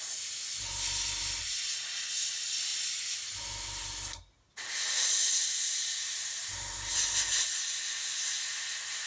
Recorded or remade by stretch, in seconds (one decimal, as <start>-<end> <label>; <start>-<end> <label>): 0.0-9.1 recorded